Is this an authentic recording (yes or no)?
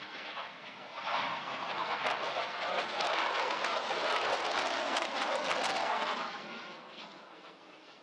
no